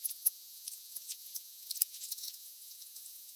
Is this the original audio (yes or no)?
no